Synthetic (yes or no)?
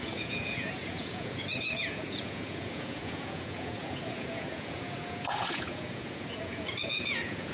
yes